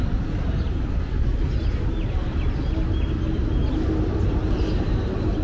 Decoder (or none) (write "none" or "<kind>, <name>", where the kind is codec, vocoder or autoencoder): none